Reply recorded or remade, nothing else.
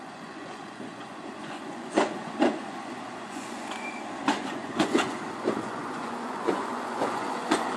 remade